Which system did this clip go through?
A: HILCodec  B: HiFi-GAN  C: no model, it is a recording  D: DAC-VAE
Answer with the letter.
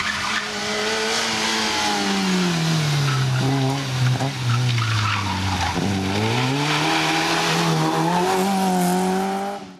C